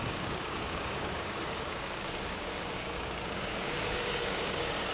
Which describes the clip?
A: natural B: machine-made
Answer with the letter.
B